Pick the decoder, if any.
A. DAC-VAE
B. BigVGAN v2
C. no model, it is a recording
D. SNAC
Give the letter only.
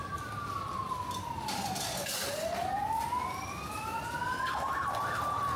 C